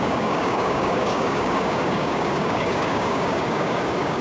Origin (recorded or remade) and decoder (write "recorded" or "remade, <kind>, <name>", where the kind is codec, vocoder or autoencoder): remade, codec, DAC